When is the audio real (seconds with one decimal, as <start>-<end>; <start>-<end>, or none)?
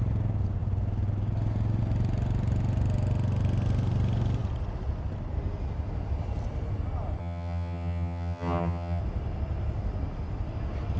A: 0.0-7.2; 9.0-11.0